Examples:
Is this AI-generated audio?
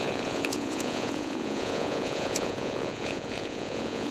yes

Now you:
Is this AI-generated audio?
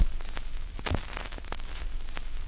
no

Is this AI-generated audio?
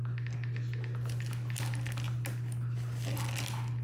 no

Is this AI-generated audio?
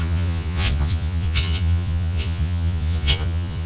yes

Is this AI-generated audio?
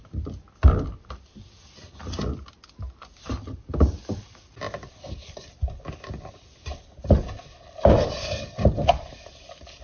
no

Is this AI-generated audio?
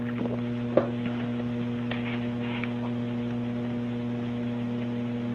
no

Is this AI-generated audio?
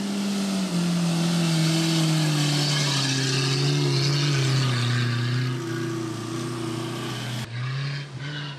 no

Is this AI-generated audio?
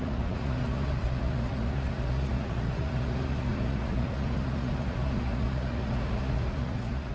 yes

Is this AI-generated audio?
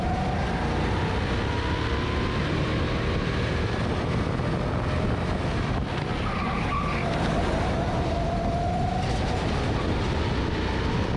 no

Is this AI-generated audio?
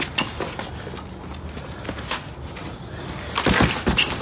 no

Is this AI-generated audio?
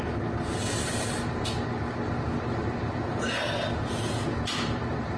no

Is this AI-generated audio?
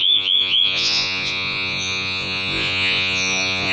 yes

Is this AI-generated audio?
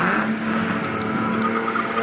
no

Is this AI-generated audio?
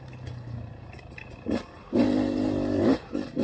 no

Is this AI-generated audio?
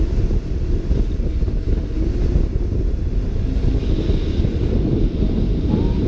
no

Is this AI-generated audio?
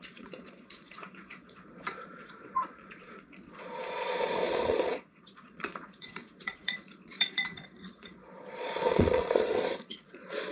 yes